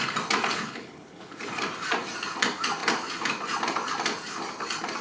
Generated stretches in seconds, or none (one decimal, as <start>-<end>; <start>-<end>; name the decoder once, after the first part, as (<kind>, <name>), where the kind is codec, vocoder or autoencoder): 0.5-1.3 (codec, HILCodec)